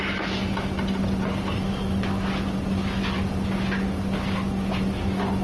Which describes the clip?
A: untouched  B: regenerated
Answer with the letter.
A